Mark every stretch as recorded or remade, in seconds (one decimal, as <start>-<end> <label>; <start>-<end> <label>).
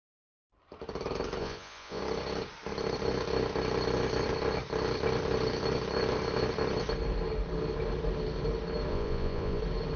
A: 0.0-1.4 recorded; 1.4-2.0 remade; 2.0-8.9 recorded; 8.9-9.6 remade; 9.6-10.0 recorded